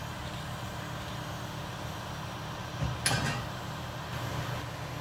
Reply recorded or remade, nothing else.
recorded